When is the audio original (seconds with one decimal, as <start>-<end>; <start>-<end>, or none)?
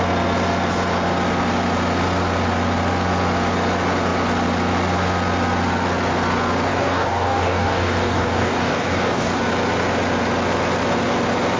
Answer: 0.0-6.7; 9.4-11.6